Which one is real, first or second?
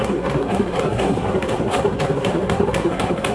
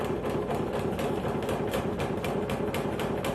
second